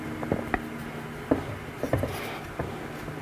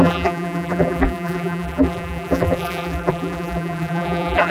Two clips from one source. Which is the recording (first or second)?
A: first